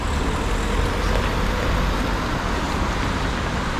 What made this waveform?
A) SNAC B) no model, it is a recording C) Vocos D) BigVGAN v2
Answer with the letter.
B